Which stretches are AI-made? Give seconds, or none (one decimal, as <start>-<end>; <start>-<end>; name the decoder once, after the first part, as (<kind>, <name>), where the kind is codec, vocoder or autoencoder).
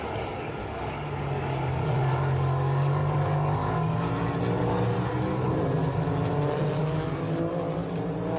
0.6-4.1 (codec, DAC); 6.8-7.5